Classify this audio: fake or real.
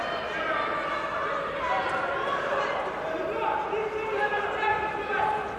real